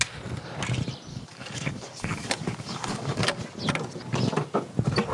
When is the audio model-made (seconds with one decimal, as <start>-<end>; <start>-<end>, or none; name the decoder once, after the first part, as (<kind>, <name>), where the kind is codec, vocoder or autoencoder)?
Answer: 1.1-3.4 (codec, DAC)